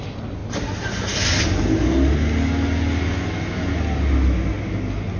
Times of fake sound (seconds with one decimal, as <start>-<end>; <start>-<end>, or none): none